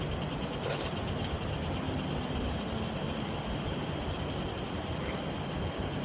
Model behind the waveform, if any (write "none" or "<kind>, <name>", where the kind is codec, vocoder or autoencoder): none